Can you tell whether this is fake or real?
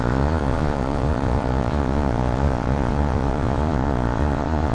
fake